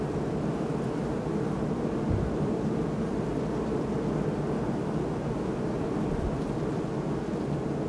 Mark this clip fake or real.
real